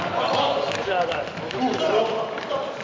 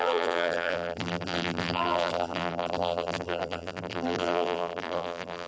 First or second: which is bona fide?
first